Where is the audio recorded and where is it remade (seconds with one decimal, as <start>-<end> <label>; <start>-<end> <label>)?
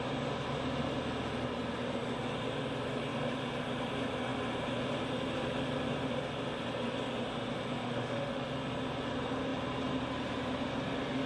0.0-7.8 recorded; 7.8-8.4 remade; 8.4-11.3 recorded